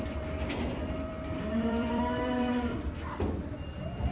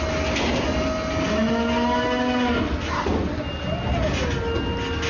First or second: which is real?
second